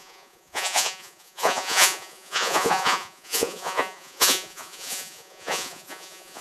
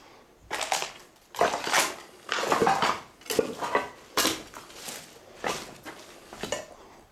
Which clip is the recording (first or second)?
second